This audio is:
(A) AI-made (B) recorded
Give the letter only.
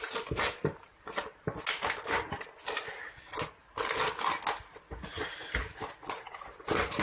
B